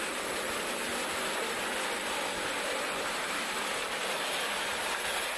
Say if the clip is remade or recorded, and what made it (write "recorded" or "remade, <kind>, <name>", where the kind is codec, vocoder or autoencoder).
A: recorded